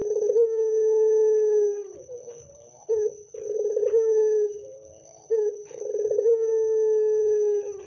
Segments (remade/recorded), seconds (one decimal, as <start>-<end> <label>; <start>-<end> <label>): 0.0-6.5 remade; 6.5-7.2 recorded; 7.2-7.9 remade